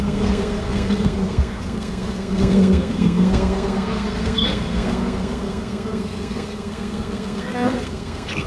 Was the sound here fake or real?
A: fake